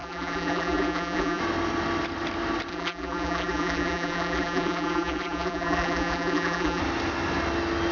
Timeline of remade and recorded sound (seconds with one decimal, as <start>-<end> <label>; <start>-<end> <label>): 0.0-1.4 remade; 1.4-2.7 recorded; 2.7-6.8 remade; 6.8-7.9 recorded